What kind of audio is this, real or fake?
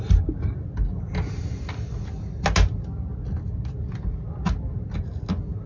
real